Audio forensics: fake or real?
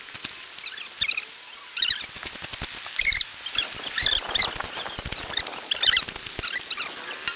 real